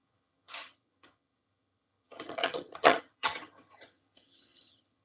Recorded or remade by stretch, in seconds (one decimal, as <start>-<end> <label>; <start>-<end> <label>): 0.0-5.0 remade